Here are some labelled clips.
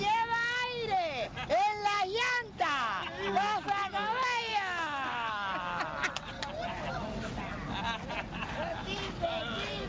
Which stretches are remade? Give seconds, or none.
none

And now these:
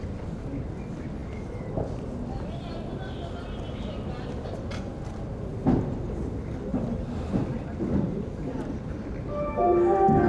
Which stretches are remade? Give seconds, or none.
none

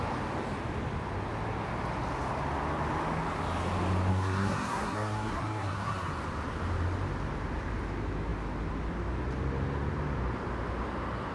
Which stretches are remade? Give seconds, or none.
4.1-6.1 (codec, SNAC)

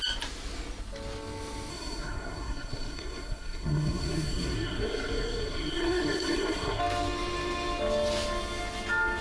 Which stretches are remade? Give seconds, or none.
1.7-6.8 (codec, SNAC)

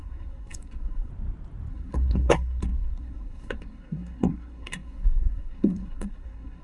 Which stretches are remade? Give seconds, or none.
0.0-1.1 (codec, SNAC); 1.7-6.6